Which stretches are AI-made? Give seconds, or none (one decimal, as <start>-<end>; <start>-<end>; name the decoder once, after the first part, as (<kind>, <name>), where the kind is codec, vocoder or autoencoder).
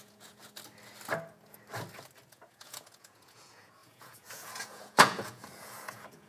0.0-0.4 (vocoder, Vocos); 2.3-6.3